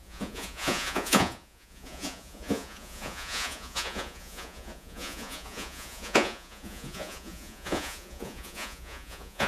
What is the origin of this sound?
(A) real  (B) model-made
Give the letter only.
B